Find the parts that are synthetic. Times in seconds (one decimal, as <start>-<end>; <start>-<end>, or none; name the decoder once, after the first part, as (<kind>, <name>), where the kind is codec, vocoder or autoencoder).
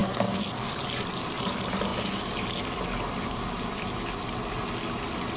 0.0-0.7 (codec, SNAC)